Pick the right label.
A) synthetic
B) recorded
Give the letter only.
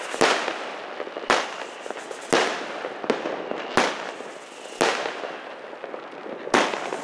B